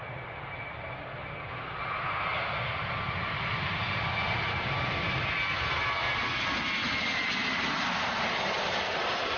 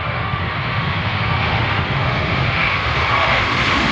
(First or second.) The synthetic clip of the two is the second